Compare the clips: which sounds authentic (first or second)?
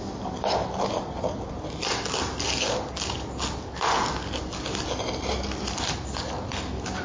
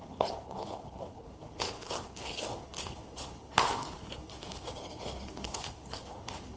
first